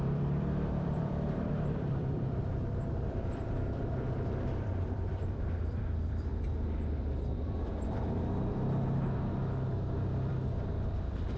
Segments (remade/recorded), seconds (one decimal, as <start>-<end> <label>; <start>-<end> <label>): 0.0-6.3 remade; 6.3-10.3 recorded; 10.3-11.4 remade